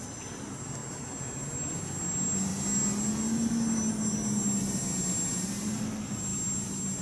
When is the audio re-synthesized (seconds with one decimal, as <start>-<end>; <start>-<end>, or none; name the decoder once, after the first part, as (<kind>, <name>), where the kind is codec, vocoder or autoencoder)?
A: none